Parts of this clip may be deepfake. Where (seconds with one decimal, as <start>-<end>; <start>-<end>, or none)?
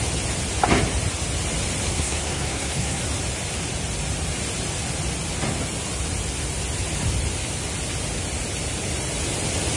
1.9-3.0